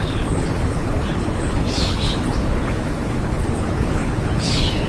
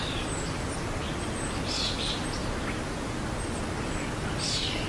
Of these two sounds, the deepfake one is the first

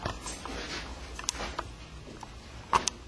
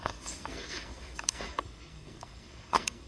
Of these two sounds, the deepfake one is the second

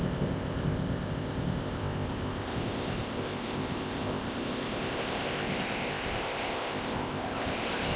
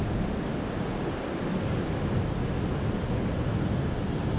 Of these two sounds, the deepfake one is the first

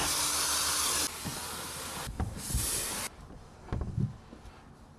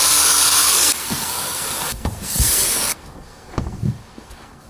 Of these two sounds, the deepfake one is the second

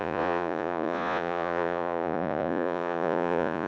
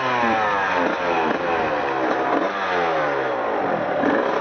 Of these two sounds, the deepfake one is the first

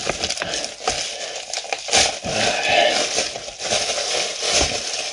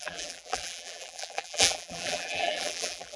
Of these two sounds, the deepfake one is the second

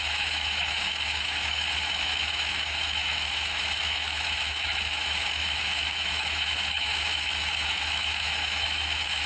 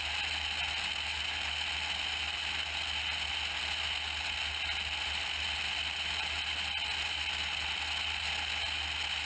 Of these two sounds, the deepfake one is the first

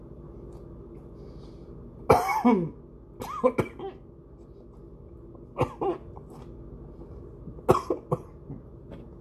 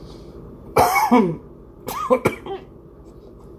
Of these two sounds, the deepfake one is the second